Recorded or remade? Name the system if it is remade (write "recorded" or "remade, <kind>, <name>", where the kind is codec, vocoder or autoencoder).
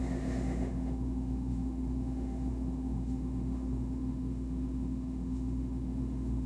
remade, autoencoder, DAC-VAE